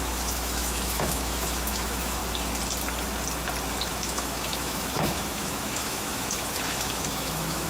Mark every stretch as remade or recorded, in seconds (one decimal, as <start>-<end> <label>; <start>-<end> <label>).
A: 0.0-2.2 remade; 2.2-3.9 recorded; 3.9-7.7 remade